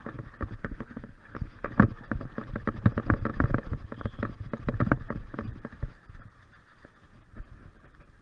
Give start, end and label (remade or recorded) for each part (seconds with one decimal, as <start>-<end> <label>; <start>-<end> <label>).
0.0-0.6 recorded; 0.6-1.7 remade; 1.7-8.2 recorded